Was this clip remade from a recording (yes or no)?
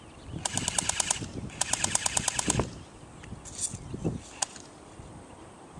no